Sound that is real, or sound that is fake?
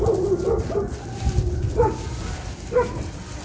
real